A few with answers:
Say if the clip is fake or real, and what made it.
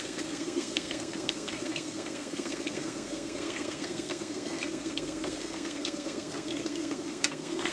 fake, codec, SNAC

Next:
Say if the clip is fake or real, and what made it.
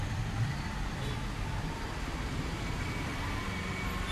real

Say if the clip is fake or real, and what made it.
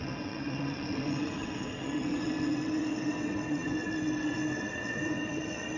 fake, vocoder, WaveNeXt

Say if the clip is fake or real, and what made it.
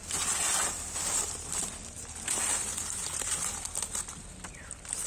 real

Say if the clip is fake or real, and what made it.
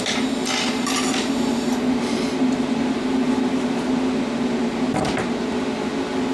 real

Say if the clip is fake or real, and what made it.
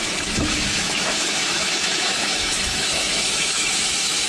fake, autoencoder, DAC-VAE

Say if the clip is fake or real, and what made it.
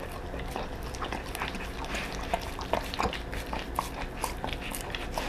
real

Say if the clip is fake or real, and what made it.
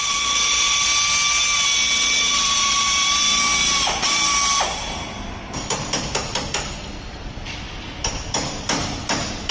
real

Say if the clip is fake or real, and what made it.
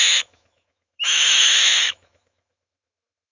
fake, autoencoder, DAC-VAE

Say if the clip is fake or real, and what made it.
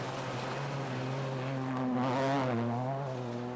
real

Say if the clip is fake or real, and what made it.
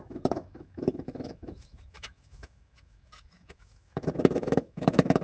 fake, autoencoder, DAC-VAE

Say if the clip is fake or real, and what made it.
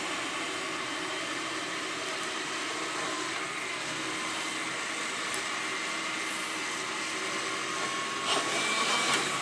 real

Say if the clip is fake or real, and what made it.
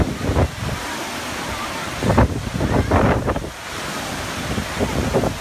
real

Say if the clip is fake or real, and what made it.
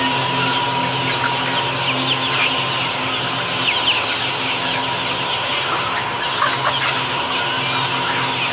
real